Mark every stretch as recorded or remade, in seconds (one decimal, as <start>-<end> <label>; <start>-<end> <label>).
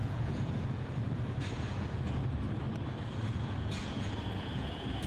0.0-2.2 remade; 2.2-3.1 recorded; 3.1-5.1 remade